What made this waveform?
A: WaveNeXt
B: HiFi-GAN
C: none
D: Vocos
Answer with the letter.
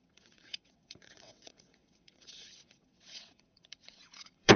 A